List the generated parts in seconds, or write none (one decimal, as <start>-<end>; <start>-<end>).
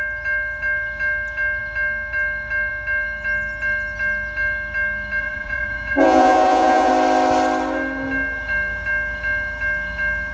5.2-6.9